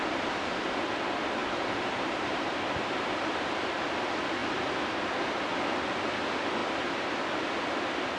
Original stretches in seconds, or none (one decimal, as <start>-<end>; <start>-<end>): 0.0-1.4; 3.3-6.6; 7.1-8.2